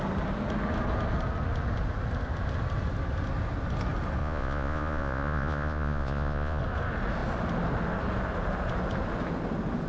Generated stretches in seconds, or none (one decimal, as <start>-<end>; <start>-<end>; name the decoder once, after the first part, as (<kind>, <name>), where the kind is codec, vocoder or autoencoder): 4.2-6.6 (vocoder, Vocos)